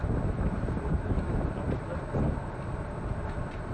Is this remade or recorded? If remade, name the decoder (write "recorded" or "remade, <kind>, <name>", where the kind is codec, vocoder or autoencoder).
remade, vocoder, BigVGAN v2